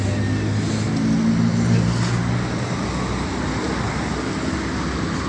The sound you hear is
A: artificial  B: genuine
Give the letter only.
B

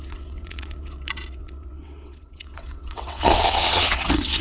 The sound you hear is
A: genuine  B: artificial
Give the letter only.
B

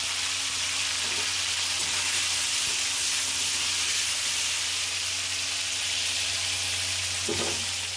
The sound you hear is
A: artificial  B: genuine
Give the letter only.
B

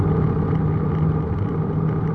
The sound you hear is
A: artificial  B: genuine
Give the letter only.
B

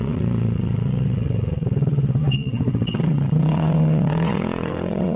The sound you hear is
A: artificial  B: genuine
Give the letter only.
A